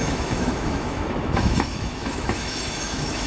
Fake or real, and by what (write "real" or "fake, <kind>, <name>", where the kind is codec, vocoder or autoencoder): fake, autoencoder, DAC-VAE